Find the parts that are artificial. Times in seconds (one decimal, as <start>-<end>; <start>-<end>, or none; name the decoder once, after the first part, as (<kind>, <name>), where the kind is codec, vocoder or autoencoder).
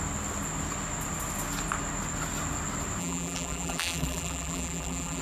3.0-5.2 (vocoder, BigVGAN v2)